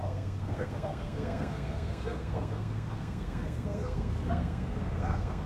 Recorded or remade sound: remade